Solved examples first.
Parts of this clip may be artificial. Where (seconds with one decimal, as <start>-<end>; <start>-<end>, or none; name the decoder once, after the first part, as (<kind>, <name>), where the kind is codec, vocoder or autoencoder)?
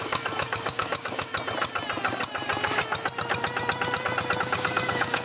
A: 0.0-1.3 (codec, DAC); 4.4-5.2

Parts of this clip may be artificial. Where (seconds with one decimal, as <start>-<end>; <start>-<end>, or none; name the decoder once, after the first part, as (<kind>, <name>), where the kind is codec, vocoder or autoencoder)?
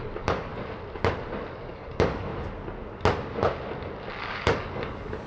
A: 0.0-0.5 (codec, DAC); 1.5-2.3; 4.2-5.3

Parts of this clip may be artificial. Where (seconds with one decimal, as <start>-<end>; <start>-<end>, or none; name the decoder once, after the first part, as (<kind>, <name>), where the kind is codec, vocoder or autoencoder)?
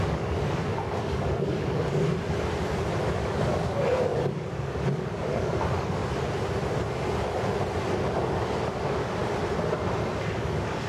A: 0.0-2.0 (codec, DAC); 3.0-6.0; 8.1-9.2; 10.1-10.9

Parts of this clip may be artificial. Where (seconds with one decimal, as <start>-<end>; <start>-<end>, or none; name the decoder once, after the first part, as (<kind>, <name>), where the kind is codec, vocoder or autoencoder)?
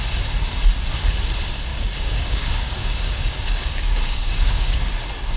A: 1.7-4.9 (codec, DAC)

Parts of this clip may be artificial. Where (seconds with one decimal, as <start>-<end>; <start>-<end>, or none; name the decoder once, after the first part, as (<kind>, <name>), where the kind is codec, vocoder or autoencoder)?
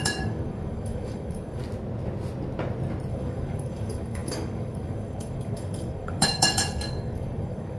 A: 0.0-1.6 (codec, DAC); 3.1-7.8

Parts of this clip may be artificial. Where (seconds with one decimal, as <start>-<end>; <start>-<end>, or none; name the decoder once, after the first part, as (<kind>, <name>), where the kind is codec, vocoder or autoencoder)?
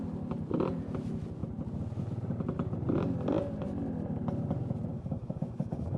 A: 4.9-6.0 (codec, DAC)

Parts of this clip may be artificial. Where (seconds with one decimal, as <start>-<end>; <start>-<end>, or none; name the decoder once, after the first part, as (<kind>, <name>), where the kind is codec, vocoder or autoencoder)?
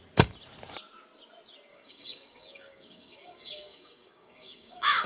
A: 1.7-5.1 (codec, DAC)